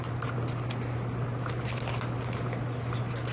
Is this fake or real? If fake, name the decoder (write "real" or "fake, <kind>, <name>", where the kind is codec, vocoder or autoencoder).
real